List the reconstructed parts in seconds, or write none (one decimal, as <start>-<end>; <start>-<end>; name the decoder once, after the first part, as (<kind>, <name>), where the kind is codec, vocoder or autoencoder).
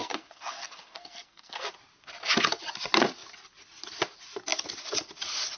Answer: 0.0-1.7 (codec, SNAC)